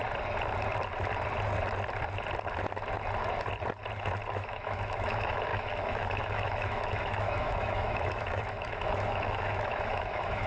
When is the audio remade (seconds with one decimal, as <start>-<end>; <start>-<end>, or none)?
4.3-10.5